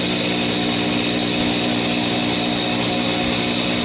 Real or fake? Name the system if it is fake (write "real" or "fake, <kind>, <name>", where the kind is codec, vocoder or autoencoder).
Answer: real